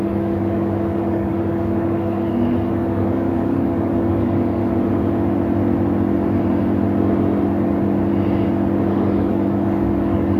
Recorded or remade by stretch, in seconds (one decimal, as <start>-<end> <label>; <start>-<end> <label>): 0.0-4.6 remade; 4.6-8.9 recorded; 8.9-10.4 remade